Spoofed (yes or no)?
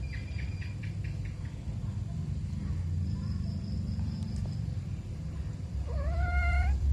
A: yes